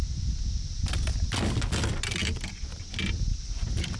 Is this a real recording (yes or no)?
yes